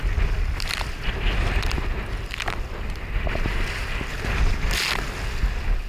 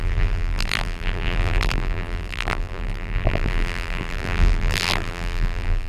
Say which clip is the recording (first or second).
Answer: first